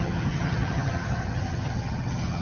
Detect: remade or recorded remade